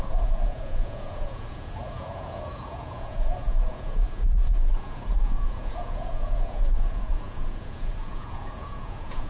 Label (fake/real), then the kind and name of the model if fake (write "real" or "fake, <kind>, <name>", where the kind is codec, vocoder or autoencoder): fake, vocoder, Vocos